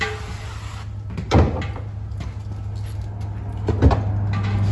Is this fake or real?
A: real